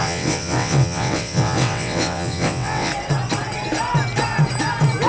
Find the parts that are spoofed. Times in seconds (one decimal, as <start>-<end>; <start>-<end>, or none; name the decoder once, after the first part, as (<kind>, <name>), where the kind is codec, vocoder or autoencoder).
0.0-2.9 (vocoder, WaveNeXt)